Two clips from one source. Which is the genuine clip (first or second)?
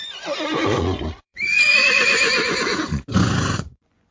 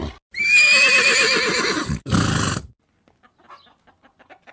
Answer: second